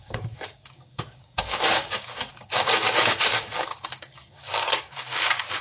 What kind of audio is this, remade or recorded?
remade